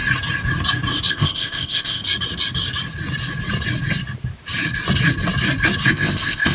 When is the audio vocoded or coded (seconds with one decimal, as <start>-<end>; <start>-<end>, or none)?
1.1-2.0; 5.9-6.5